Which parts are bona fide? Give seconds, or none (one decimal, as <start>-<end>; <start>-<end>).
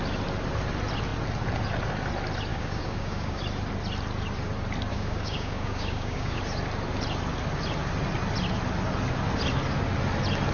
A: 0.0-2.5; 3.4-4.9; 6.4-10.5